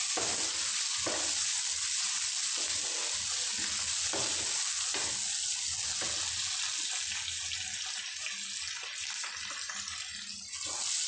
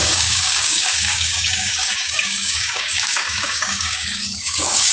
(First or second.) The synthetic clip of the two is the second